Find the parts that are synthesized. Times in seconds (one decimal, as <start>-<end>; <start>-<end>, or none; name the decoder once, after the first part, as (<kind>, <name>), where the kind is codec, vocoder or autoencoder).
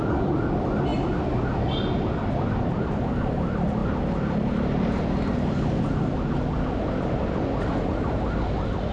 none